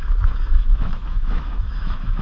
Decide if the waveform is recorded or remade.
remade